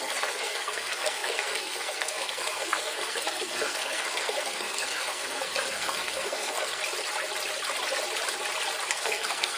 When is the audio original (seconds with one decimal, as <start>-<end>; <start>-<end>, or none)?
6.8-8.9